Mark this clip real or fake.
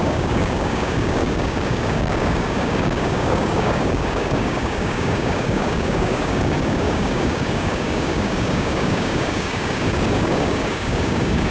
fake